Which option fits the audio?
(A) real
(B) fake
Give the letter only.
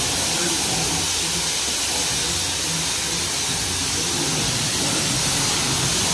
A